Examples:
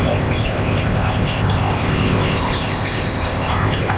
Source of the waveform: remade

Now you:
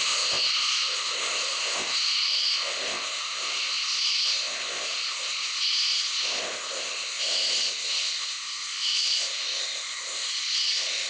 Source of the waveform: remade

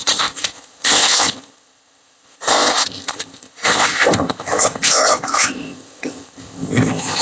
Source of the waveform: remade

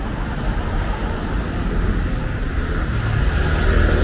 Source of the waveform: recorded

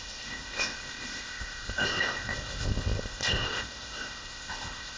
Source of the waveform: remade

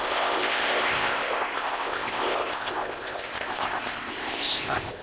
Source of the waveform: remade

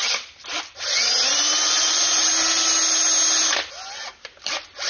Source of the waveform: recorded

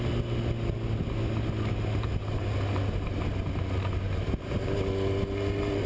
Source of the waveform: recorded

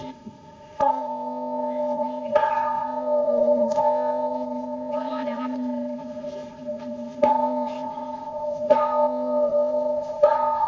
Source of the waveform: remade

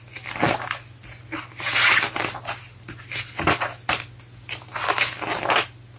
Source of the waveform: recorded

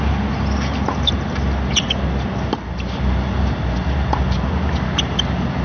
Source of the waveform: recorded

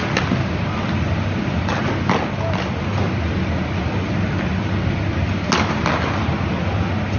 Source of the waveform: recorded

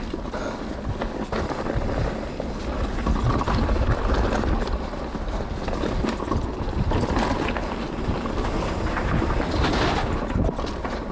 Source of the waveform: recorded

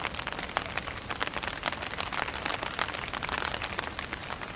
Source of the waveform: recorded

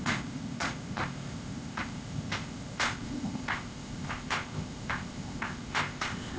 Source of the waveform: remade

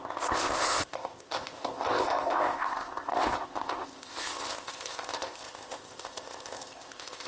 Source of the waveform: remade